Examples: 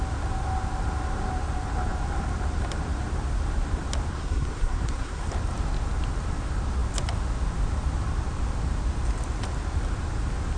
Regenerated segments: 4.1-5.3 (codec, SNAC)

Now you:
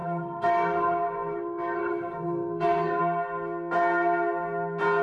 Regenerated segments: 0.0-3.0 (codec, SNAC)